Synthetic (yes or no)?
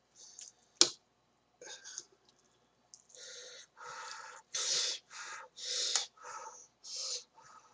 no